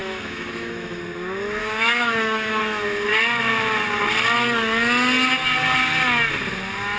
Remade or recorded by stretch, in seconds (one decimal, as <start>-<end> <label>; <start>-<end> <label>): 0.0-1.0 remade; 1.0-1.6 recorded; 1.6-2.6 remade; 2.6-7.0 recorded